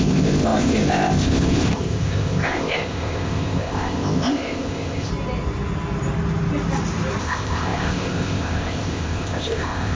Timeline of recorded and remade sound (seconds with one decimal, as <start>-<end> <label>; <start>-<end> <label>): 0.0-5.1 remade; 5.1-7.2 recorded; 7.2-9.9 remade